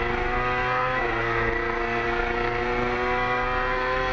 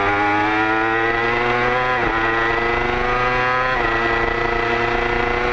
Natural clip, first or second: second